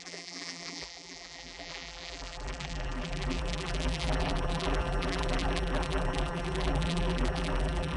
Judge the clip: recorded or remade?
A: remade